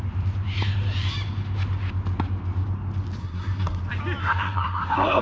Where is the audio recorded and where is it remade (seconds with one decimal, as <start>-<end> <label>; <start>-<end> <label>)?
0.0-3.2 recorded; 3.2-3.8 remade; 3.8-4.2 recorded; 4.2-5.2 remade